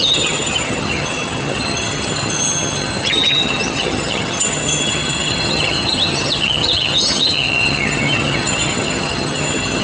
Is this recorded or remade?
remade